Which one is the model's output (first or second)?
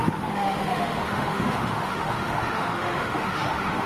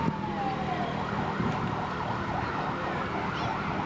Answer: first